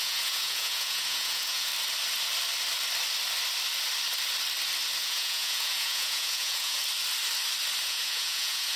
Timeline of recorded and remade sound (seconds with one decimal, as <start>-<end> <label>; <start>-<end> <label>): 0.0-1.7 remade; 1.7-5.0 recorded; 5.0-6.8 remade; 6.8-7.8 recorded; 7.8-8.8 remade